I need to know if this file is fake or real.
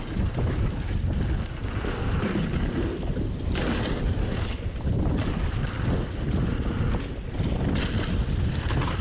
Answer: real